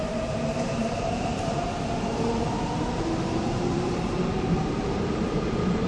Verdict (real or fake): fake